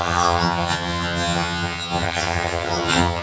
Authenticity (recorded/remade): remade